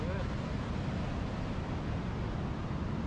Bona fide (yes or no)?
yes